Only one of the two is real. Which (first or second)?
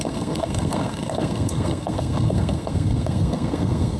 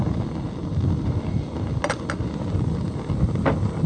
second